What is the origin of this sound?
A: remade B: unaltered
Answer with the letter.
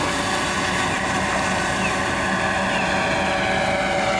B